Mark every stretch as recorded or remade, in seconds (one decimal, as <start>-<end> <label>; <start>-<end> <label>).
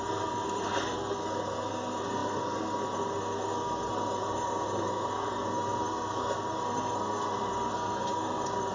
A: 0.0-8.7 remade